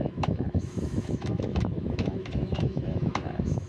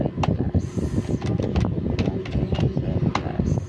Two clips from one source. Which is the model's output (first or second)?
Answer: first